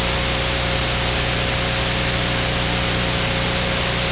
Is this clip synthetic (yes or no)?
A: no